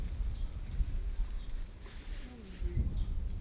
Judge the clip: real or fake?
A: real